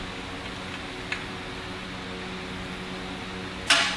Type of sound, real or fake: real